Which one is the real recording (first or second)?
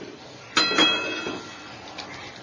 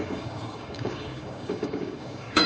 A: first